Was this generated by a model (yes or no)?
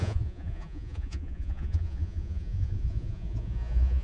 yes